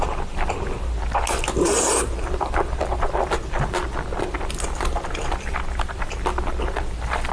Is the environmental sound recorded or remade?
recorded